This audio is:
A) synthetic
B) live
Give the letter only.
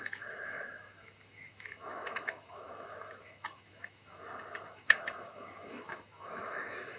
A